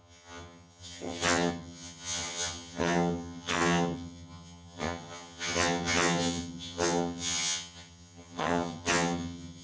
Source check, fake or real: fake